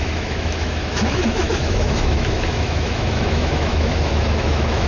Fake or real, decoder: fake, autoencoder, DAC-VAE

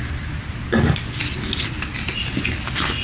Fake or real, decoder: real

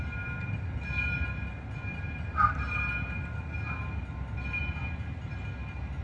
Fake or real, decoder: real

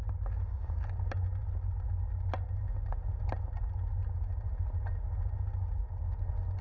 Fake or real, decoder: real